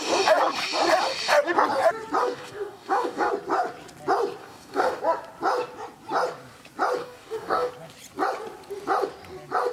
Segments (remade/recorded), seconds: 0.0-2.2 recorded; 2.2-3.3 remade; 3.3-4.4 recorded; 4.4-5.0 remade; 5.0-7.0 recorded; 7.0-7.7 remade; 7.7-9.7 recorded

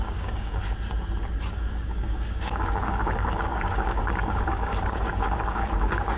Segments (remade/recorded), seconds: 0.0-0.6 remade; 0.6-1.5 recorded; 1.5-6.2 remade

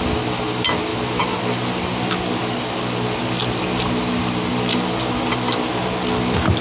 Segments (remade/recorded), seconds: 0.0-6.6 recorded